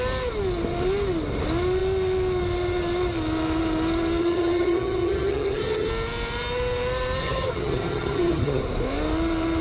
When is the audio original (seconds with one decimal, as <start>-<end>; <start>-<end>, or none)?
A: 0.0-4.2; 5.9-7.2; 8.6-9.6